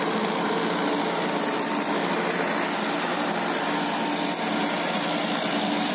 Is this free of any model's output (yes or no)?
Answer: yes